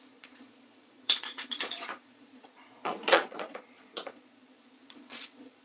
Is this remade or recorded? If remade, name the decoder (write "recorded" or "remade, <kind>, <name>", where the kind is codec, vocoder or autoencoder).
remade, vocoder, Vocos